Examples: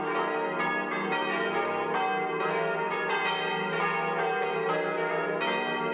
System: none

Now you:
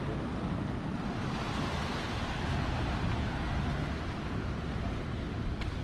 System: none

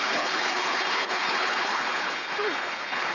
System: codec, HILCodec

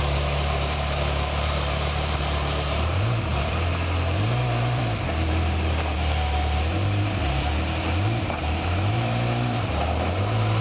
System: vocoder, BigVGAN v2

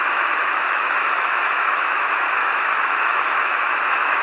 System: autoencoder, DAC-VAE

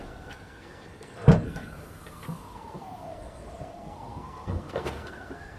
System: codec, SNAC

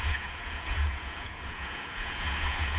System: vocoder, Vocos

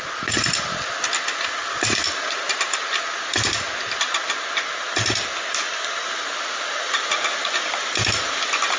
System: none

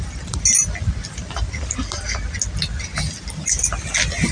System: none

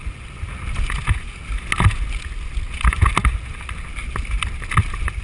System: none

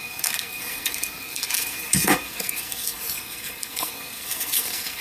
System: codec, SNAC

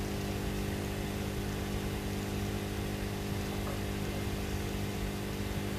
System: none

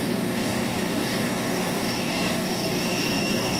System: codec, DAC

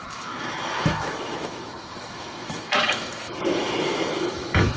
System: autoencoder, DAC-VAE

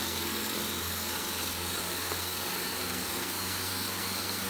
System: codec, SNAC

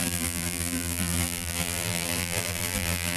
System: vocoder, BigVGAN v2